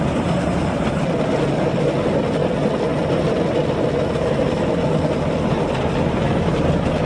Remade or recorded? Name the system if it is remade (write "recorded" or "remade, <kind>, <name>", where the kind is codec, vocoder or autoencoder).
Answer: recorded